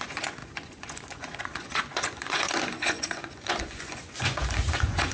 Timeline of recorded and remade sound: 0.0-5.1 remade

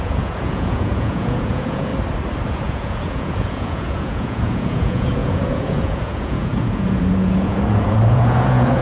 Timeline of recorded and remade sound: 0.0-1.9 remade; 1.9-2.5 recorded; 2.5-8.8 remade

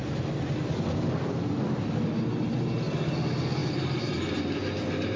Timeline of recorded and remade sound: 0.0-5.2 recorded

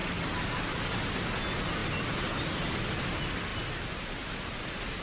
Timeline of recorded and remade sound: 0.0-5.0 recorded

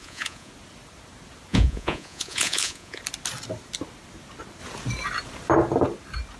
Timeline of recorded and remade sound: 0.0-0.5 remade; 0.5-1.5 recorded; 1.5-3.0 remade; 3.0-6.4 recorded